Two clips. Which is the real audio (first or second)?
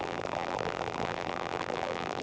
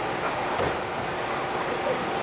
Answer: second